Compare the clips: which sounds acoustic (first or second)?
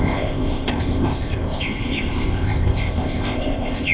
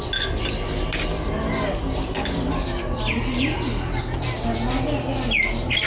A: second